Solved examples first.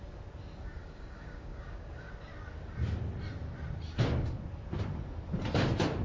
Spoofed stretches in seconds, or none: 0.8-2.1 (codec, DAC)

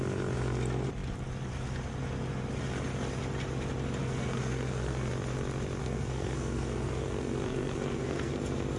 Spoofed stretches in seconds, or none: 4.0-5.1 (codec, SNAC); 5.8-8.4

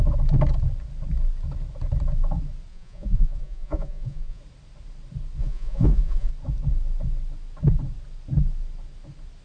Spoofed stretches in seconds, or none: 2.7-4.4 (vocoder, Vocos); 5.4-6.3

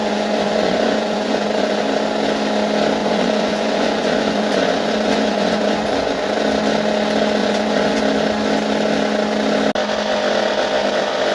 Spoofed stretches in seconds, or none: 0.0-1.8 (vocoder, Vocos); 3.0-6.4; 7.4-8.0